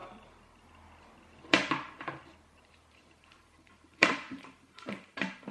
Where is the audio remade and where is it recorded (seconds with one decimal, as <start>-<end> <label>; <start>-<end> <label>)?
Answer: 0.0-2.4 recorded; 2.4-5.5 remade

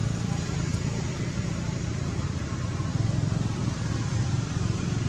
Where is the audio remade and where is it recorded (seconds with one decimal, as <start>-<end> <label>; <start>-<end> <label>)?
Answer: 0.0-1.8 remade; 1.8-5.1 recorded

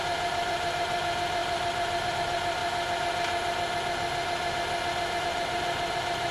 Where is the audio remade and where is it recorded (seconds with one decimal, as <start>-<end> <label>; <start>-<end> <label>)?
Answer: 0.0-2.6 remade; 2.6-5.2 recorded; 5.2-6.3 remade

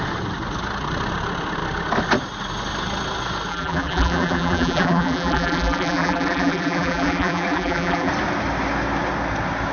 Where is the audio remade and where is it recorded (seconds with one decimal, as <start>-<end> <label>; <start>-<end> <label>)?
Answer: 0.0-3.5 recorded; 3.5-8.1 remade; 8.1-9.7 recorded

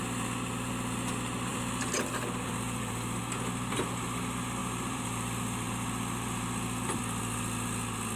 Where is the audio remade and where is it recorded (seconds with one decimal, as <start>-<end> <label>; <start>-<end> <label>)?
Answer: 0.0-1.5 recorded; 1.5-3.2 remade; 3.2-4.6 recorded; 4.6-7.0 remade; 7.0-8.2 recorded

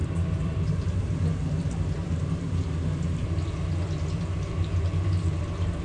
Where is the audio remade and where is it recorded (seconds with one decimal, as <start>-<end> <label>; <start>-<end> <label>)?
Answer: 0.0-1.3 remade; 1.3-5.8 recorded

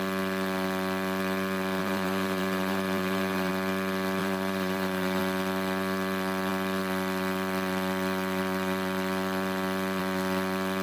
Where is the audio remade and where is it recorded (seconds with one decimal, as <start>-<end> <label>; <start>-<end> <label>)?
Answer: 0.0-1.8 recorded; 1.8-3.5 remade; 3.5-4.2 recorded; 4.2-5.2 remade; 5.2-10.8 recorded